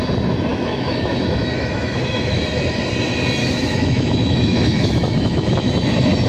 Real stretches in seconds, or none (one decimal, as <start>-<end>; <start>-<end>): 0.0-0.5; 2.4-3.4; 5.7-6.3